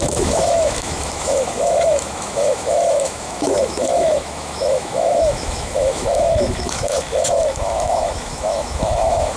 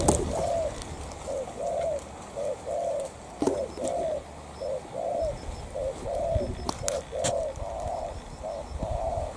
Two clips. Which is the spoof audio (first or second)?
first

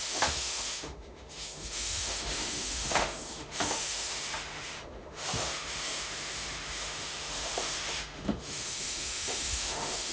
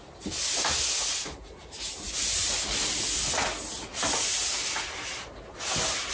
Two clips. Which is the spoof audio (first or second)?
first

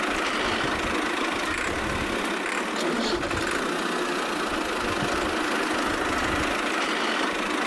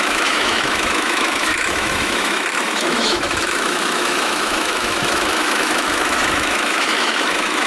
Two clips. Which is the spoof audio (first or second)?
second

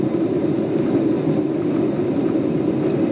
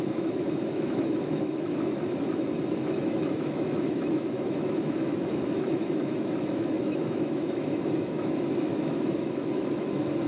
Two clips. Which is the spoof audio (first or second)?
second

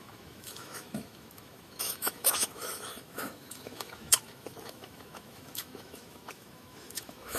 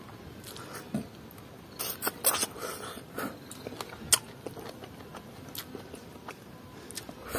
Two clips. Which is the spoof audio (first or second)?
first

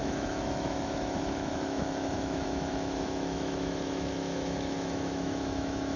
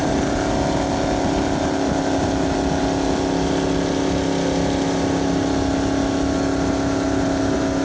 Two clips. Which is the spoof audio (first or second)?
first